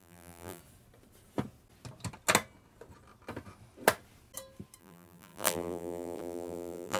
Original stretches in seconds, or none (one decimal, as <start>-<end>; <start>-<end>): 0.6-4.8